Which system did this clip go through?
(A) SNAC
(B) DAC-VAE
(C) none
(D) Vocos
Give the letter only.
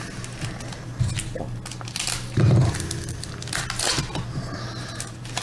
C